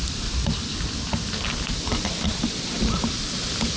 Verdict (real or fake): real